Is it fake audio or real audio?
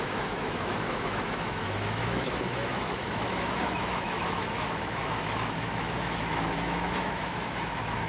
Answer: fake